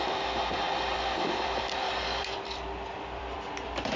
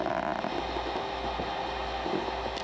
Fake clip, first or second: first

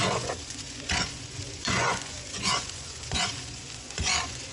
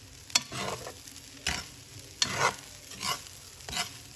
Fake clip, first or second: first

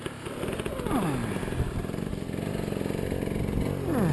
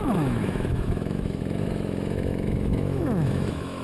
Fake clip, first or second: second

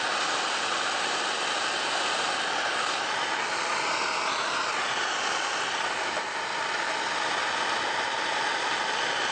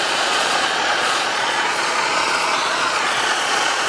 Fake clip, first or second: second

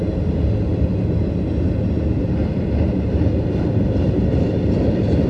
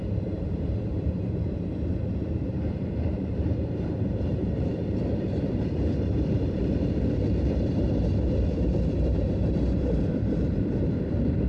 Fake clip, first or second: second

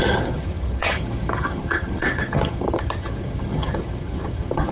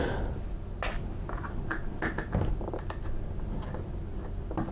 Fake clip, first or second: first